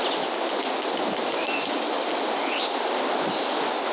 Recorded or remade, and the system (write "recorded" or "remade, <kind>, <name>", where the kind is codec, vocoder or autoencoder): recorded